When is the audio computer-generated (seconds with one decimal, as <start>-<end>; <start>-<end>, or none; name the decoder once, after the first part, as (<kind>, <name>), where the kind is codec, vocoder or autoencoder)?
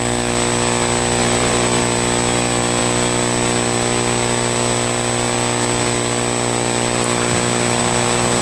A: 1.2-1.8 (vocoder, BigVGAN v2)